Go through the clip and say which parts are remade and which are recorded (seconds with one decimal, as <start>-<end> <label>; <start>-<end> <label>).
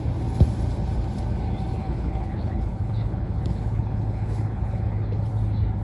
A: 0.0-1.8 recorded; 1.8-5.3 remade; 5.3-5.8 recorded